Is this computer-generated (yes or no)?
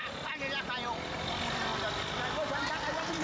no